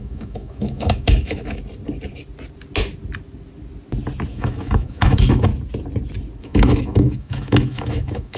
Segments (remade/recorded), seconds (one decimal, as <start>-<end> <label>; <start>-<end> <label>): 0.0-1.6 remade; 1.6-4.3 recorded; 4.3-5.5 remade; 5.5-6.4 recorded; 6.4-8.4 remade